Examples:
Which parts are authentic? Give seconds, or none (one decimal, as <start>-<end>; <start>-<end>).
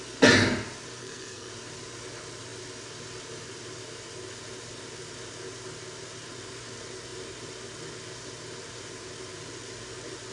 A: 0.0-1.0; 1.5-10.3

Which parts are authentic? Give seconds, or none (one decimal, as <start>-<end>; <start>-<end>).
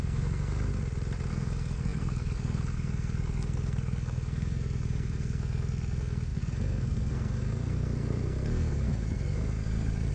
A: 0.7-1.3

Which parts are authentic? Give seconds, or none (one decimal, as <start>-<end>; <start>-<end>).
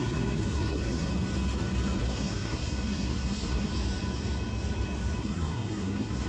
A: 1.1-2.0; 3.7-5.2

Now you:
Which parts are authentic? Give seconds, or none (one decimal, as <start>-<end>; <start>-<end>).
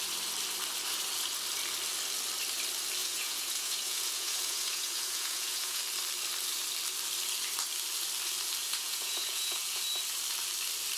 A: 0.0-3.0; 5.8-8.6; 9.8-11.0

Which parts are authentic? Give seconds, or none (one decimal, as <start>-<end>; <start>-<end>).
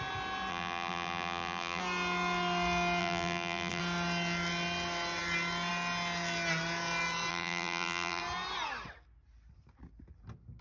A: 0.0-0.5; 1.8-3.0; 3.8-7.3; 8.2-10.6